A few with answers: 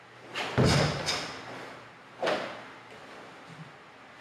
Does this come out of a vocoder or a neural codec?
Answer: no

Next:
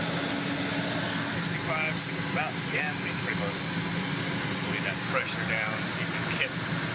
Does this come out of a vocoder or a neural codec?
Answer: no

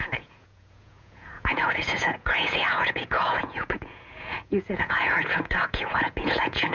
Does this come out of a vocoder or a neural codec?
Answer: yes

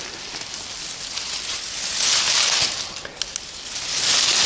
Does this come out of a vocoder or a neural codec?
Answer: no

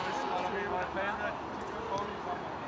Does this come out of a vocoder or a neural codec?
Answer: no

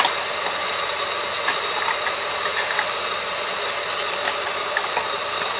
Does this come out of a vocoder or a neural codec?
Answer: no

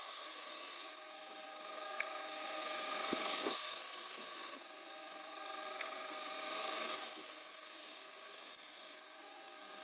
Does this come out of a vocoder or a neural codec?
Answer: yes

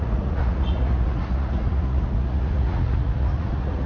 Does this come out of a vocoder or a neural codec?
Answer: yes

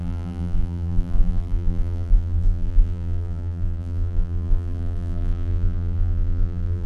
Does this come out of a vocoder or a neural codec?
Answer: yes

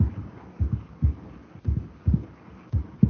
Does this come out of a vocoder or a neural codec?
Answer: no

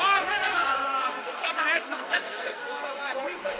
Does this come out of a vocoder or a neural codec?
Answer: yes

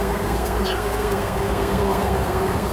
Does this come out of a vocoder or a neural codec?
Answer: yes